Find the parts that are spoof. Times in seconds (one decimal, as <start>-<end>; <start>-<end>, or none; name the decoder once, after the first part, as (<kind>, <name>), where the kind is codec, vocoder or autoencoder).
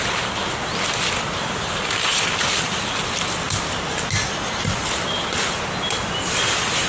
none